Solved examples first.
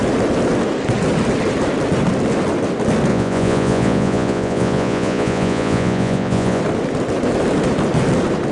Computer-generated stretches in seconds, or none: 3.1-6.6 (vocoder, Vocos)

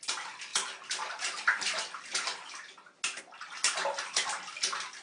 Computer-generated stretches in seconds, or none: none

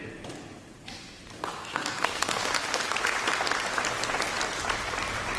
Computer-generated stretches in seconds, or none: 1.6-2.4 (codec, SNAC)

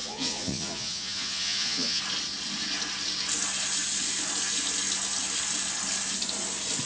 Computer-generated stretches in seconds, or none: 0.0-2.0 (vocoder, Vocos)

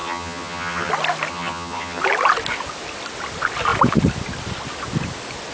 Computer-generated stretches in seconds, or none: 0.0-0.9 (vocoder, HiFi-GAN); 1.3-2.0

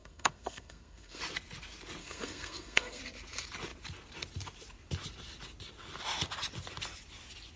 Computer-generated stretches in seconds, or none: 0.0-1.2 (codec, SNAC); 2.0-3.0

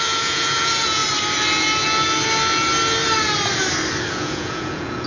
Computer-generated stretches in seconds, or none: 0.0-1.0 (vocoder, Vocos); 4.1-5.1

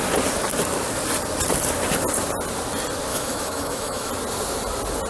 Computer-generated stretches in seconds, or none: 3.1-4.1 (autoencoder, DAC-VAE)